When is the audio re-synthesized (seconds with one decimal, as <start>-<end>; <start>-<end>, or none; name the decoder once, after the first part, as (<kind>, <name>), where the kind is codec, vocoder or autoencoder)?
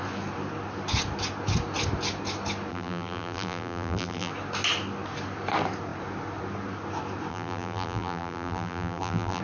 2.7-4.3 (vocoder, BigVGAN v2); 7.3-9.4